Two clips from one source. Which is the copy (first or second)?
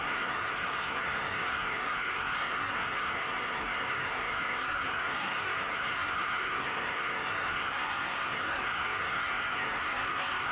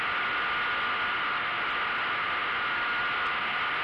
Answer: first